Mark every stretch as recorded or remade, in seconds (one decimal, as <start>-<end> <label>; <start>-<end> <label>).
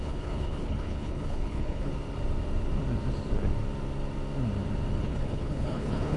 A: 0.0-1.9 remade; 1.9-5.0 recorded; 5.0-6.2 remade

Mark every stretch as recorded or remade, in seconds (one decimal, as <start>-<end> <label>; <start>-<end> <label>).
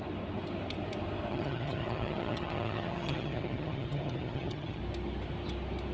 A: 0.0-1.3 recorded; 1.3-4.8 remade; 4.8-5.9 recorded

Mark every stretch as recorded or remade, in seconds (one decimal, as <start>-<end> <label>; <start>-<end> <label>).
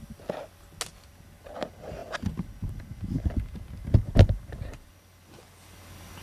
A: 0.0-3.8 recorded; 3.8-4.9 remade; 4.9-6.2 recorded